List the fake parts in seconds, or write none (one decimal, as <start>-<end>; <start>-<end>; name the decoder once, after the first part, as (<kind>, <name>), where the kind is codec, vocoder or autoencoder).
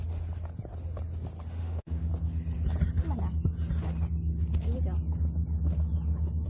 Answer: 1.6-2.1 (autoencoder, DAC-VAE)